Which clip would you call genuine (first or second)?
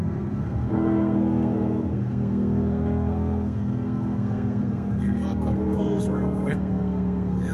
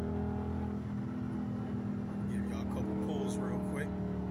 second